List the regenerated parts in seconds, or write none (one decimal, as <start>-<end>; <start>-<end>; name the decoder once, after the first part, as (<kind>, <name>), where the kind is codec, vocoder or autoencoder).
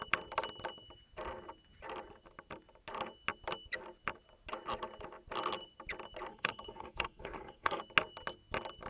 6.3-7.8 (codec, SNAC)